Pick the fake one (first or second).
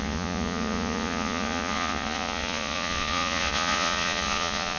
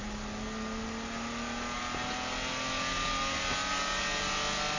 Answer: first